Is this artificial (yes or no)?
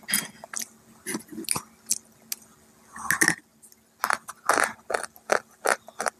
no